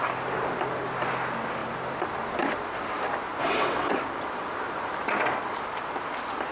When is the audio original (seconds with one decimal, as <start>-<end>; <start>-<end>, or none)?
0.0-3.4; 3.9-6.5